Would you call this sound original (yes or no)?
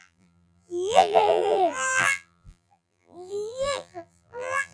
no